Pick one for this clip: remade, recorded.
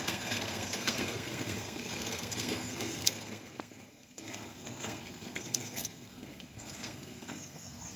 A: remade